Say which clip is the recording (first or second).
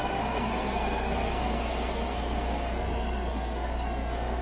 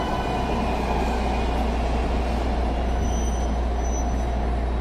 second